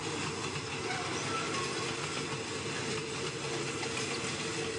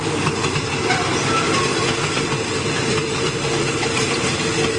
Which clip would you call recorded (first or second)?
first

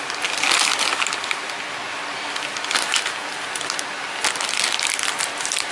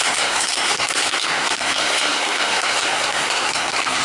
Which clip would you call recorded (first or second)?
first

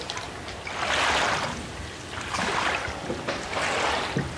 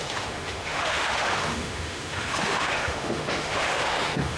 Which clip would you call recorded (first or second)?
first